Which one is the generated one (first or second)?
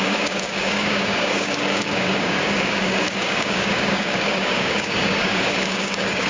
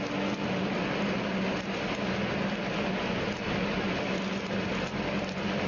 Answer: first